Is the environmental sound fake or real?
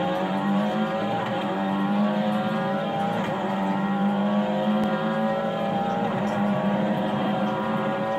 fake